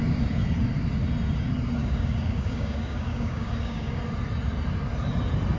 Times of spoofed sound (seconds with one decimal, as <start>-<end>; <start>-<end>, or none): 1.8-4.0